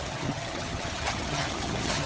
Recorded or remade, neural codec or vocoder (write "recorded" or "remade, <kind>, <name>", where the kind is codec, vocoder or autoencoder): remade, vocoder, HiFi-GAN